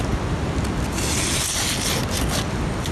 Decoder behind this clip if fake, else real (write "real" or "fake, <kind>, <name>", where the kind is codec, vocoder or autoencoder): real